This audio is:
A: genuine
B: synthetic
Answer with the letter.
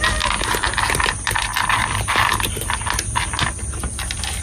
A